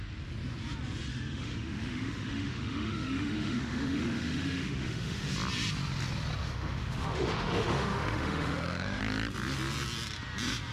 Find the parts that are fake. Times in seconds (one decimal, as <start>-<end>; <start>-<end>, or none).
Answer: 1.1-5.3; 6.4-9.0